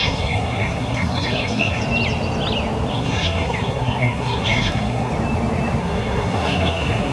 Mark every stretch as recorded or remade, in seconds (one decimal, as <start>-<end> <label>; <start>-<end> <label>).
0.0-1.8 remade; 1.8-2.9 recorded; 2.9-5.1 remade; 5.1-5.8 recorded; 5.8-7.1 remade